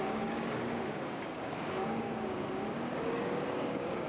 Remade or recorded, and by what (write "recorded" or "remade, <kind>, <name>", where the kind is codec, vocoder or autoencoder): remade, codec, DAC